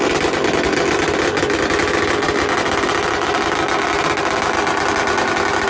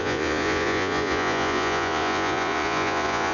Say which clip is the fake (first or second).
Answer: second